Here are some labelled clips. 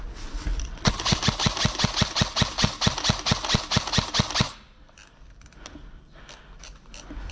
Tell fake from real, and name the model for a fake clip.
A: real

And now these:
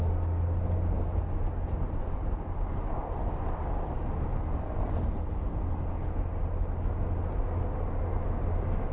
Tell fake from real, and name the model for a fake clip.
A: real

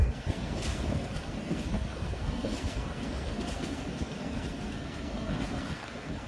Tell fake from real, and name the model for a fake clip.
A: fake, codec, SNAC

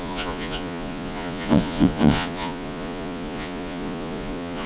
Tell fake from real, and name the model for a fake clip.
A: fake, vocoder, Vocos